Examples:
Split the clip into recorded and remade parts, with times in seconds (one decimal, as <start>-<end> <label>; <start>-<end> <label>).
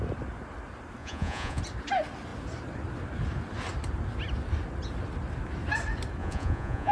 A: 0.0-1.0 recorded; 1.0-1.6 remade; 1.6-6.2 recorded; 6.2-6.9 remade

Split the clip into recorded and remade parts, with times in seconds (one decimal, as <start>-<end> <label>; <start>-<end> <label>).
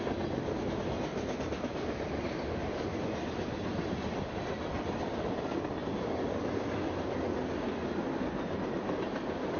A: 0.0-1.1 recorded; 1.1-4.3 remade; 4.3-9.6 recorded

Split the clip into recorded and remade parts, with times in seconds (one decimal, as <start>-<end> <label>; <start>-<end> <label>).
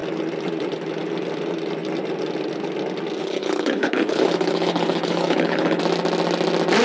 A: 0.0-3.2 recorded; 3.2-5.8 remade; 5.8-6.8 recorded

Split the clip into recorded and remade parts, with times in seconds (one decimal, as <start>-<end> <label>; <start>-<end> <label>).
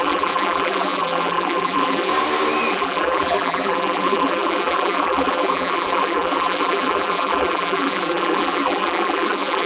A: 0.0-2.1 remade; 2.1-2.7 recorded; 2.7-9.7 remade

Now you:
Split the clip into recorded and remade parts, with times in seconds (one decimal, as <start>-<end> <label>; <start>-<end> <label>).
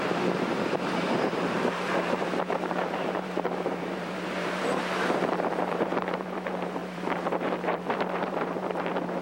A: 0.0-9.2 remade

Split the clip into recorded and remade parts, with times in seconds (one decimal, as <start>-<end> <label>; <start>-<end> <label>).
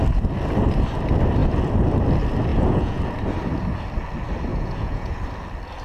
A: 0.0-2.5 recorded; 2.5-3.0 remade; 3.0-4.5 recorded; 4.5-5.2 remade; 5.2-5.8 recorded